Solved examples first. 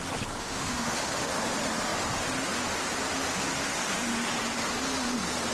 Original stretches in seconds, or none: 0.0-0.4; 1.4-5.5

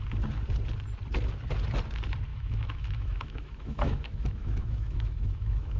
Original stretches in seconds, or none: 0.0-2.3

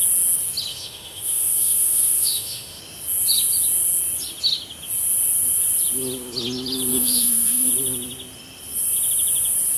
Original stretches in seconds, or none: 0.0-0.7; 2.8-6.9; 7.7-9.8

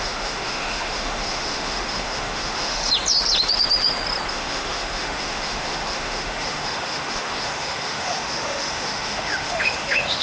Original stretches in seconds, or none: 2.8-4.3

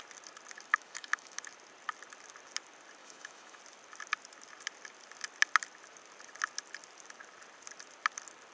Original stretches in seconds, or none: 0.0-0.7; 1.4-3.0; 3.6-8.5

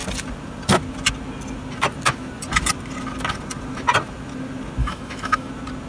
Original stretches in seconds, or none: 0.0-4.8; 5.5-5.9

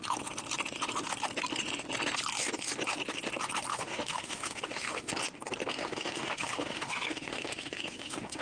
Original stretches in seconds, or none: 0.0-3.7; 5.1-5.7

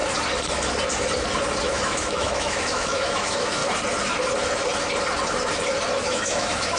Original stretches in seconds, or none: 0.0-1.6; 3.6-6.0